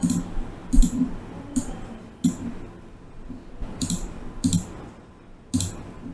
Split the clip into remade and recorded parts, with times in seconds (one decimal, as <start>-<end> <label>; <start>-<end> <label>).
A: 0.0-6.1 recorded